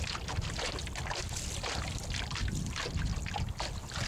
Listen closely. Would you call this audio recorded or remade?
recorded